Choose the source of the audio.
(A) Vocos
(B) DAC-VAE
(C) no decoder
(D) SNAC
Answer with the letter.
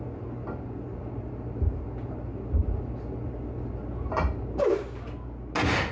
C